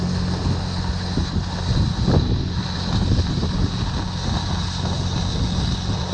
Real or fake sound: real